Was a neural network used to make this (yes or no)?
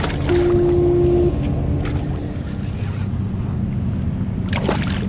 no